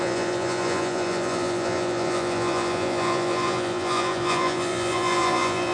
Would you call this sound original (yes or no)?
no